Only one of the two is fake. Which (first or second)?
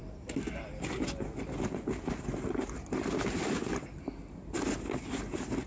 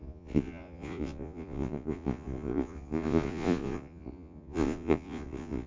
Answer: second